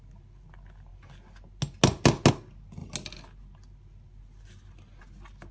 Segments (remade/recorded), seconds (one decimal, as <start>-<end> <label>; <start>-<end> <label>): 0.0-5.5 recorded